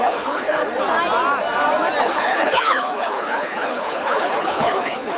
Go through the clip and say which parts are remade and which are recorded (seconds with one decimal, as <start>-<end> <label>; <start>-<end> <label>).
0.0-0.6 remade; 0.6-2.0 recorded; 2.0-5.2 remade